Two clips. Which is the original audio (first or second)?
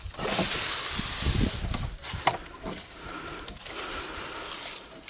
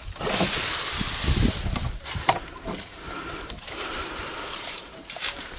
first